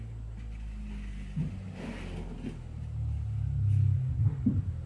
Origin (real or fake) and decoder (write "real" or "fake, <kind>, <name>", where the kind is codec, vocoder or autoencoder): real